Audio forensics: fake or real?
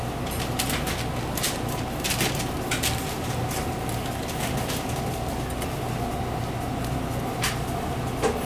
real